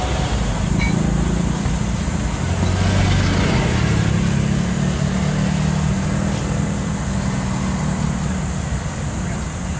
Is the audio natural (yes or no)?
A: yes